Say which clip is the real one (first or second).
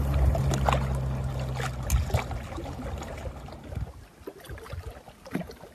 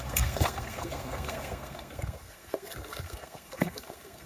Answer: first